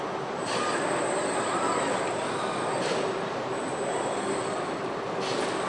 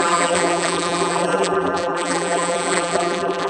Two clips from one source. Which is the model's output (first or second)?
second